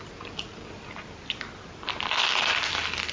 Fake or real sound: real